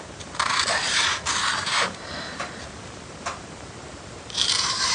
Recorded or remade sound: remade